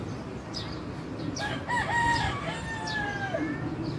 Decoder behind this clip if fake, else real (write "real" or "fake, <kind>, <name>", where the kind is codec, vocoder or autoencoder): real